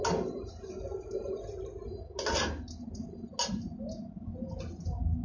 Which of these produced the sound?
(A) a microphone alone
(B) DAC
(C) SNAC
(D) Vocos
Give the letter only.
A